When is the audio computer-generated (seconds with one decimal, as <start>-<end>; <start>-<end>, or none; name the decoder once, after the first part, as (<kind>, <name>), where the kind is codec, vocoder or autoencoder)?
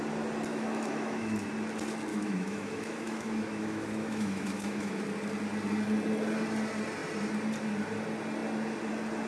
0.5-1.5 (autoencoder, DAC-VAE); 2.1-5.0